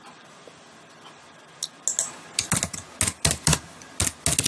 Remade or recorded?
recorded